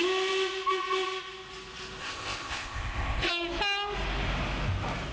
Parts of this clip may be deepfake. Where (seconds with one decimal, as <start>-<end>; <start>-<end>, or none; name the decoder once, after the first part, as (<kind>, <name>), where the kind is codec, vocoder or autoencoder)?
2.0-3.3 (codec, ZipCodec)